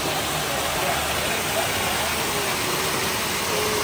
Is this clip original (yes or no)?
yes